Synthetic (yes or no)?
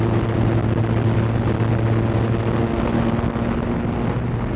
no